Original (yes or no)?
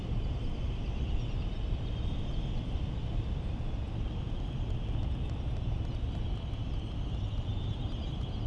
yes